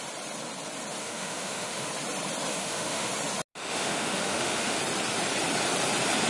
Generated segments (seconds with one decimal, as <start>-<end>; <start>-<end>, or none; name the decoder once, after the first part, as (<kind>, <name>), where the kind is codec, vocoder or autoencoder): 1.0-1.9 (autoencoder, DAC-VAE); 2.5-3.1; 3.6-4.8

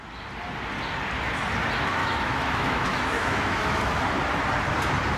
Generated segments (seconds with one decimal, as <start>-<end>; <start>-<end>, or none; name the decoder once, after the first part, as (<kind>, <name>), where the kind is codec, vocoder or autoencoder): 2.0-3.8 (autoencoder, DAC-VAE)